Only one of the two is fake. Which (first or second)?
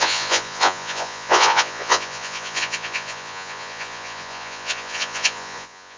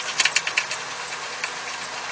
first